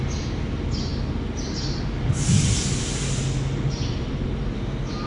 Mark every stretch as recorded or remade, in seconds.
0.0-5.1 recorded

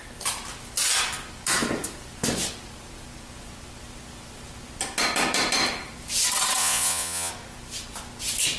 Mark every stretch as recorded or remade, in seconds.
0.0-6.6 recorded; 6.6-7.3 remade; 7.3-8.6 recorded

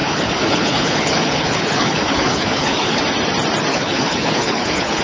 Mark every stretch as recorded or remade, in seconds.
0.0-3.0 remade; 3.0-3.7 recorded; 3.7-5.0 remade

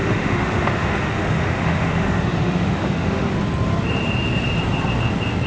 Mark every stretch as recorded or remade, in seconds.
0.0-3.3 remade; 3.3-5.5 recorded

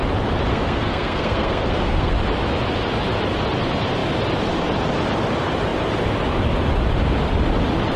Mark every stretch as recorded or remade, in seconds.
0.0-0.5 recorded; 0.5-2.1 remade; 2.1-8.0 recorded

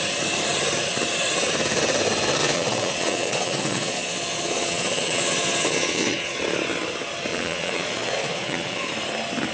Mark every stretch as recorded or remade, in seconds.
0.0-2.4 recorded; 2.4-6.4 remade; 6.4-7.3 recorded; 7.3-8.9 remade; 8.9-9.5 recorded